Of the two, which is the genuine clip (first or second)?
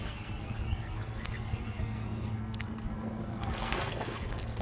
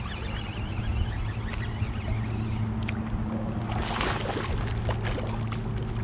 second